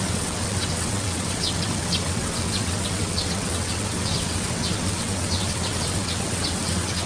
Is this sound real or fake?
fake